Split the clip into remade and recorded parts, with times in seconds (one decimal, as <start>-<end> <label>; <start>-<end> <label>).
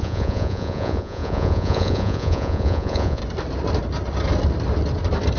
0.0-3.2 remade; 3.2-5.4 recorded